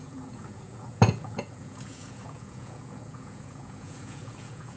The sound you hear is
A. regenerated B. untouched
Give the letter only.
A